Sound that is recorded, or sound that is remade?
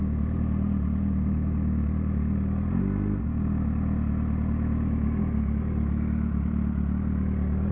recorded